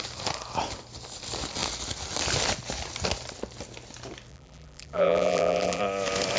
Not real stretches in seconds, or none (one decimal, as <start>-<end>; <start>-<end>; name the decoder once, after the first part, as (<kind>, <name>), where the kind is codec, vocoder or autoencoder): 4.3-5.8 (vocoder, BigVGAN v2)